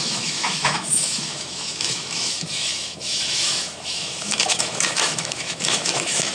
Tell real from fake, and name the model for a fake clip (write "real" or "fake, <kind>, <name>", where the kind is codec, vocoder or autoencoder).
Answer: fake, autoencoder, DAC-VAE